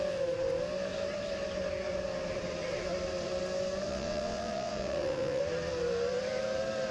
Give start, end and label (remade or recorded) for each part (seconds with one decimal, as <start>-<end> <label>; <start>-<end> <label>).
0.0-3.9 recorded; 3.9-5.4 remade; 5.4-6.9 recorded